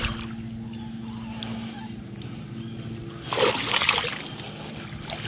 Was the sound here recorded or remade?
recorded